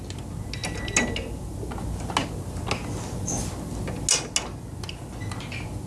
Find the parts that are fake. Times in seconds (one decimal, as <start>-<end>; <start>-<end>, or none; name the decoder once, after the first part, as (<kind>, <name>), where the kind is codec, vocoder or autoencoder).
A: none